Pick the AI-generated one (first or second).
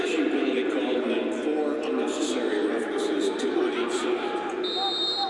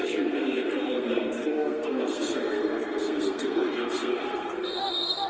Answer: second